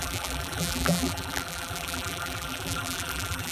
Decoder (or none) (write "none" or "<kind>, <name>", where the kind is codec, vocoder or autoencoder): vocoder, BigVGAN v2